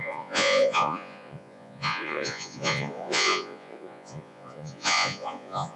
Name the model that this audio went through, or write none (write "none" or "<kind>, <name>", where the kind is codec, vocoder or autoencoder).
vocoder, Vocos